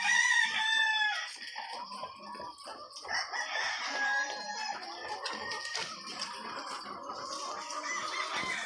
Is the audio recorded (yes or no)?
yes